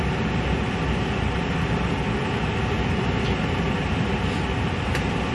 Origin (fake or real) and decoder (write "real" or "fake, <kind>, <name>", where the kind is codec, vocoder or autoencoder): real